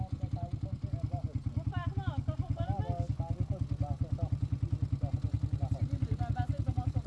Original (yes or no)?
yes